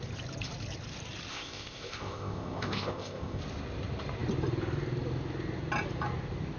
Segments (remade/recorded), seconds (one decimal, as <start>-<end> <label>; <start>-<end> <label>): 0.0-1.3 recorded; 1.3-3.4 remade; 3.4-6.6 recorded